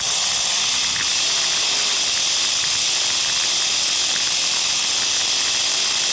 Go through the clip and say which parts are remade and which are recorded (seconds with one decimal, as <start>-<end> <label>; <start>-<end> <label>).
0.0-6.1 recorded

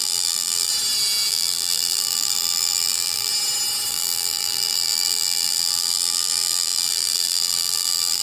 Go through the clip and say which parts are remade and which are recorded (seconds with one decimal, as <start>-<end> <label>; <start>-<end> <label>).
0.0-0.7 remade; 0.7-1.3 recorded; 1.3-3.3 remade; 3.3-3.9 recorded; 3.9-8.2 remade

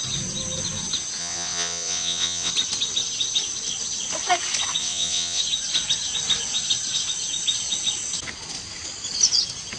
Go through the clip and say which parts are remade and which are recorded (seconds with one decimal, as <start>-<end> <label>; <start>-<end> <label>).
0.0-1.2 recorded; 1.2-2.5 remade; 2.5-4.8 recorded; 4.8-5.4 remade; 5.4-9.8 recorded

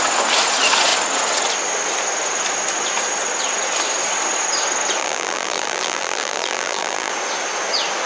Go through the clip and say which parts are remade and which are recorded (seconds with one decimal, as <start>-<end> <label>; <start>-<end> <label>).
0.0-5.0 recorded; 5.0-7.1 remade; 7.1-8.1 recorded

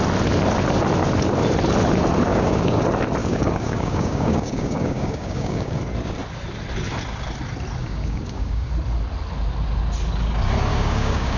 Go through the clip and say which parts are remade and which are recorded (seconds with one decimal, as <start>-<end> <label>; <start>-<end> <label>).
0.0-2.3 recorded; 2.3-2.8 remade; 2.8-3.2 recorded; 3.2-5.8 remade; 5.8-7.8 recorded; 7.8-8.7 remade; 8.7-10.7 recorded; 10.7-11.4 remade